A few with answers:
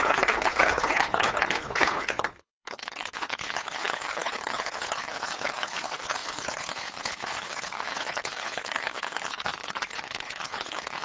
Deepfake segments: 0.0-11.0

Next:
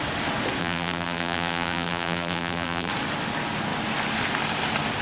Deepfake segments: 0.6-2.9

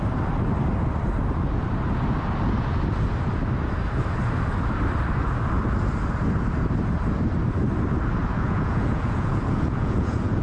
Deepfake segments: 8.2-10.4

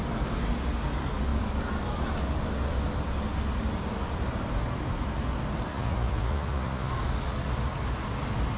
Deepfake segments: 5.7-6.9